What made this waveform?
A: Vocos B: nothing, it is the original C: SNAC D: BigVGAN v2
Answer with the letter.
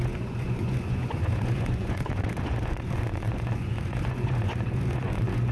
A